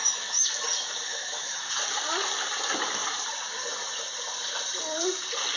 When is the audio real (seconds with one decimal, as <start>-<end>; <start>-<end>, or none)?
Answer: 0.5-1.1; 1.8-5.6